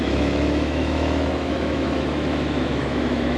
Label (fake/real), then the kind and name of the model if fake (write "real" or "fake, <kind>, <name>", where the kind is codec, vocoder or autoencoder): fake, autoencoder, DAC-VAE